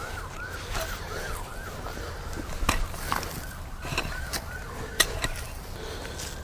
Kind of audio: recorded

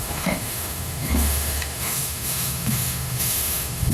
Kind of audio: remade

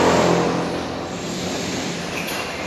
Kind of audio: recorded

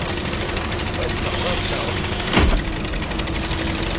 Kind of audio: recorded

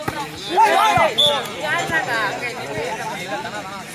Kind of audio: recorded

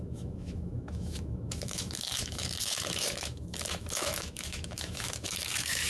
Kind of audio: remade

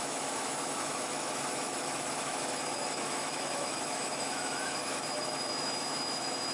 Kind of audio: remade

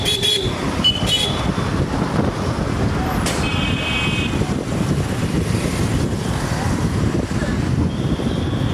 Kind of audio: recorded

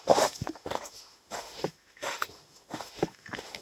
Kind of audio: remade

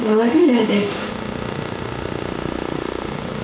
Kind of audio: remade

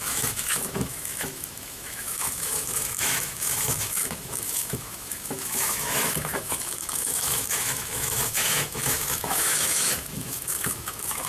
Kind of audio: remade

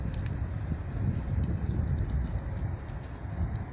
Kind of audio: recorded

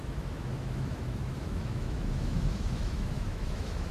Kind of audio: remade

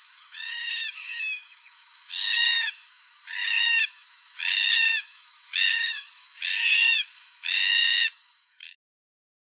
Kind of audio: remade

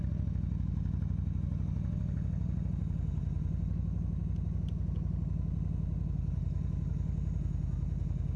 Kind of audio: recorded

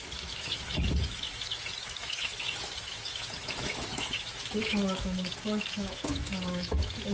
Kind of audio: remade